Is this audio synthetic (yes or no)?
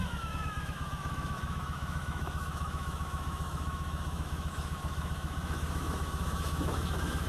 yes